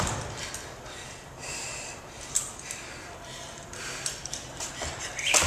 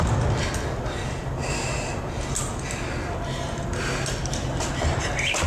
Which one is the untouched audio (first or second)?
second